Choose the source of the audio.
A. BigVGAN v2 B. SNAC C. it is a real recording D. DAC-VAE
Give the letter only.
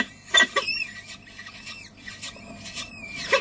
C